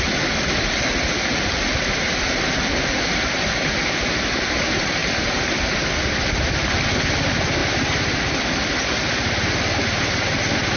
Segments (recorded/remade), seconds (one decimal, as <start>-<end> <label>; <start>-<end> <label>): 0.0-5.0 recorded; 5.0-5.7 remade; 5.7-7.6 recorded; 7.6-8.7 remade; 8.7-10.8 recorded